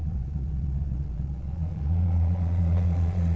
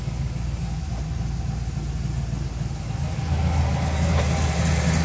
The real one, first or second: second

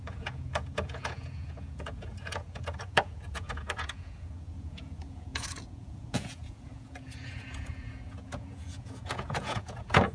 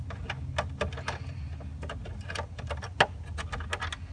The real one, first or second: second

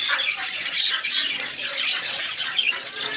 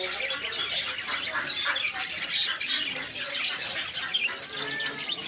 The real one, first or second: second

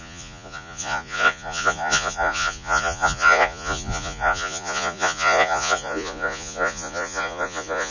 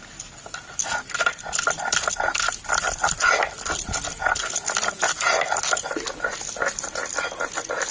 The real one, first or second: second